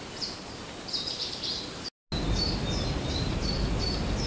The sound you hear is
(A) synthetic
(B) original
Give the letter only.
B